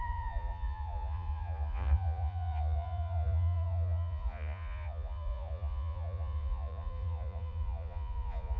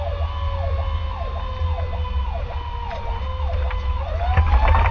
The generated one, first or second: first